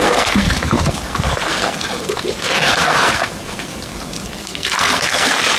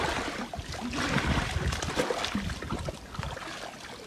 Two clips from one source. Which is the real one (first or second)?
second